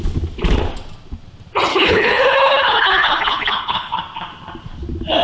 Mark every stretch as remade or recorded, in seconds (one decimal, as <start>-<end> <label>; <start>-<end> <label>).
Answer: 0.0-1.7 recorded; 1.7-4.0 remade; 4.0-5.2 recorded